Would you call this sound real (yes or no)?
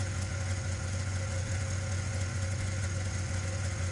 no